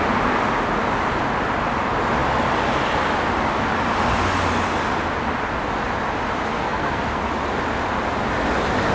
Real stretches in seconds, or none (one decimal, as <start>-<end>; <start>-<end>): 0.0-6.5; 7.3-8.9